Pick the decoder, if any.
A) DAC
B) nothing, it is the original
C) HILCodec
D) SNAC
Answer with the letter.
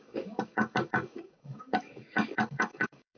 A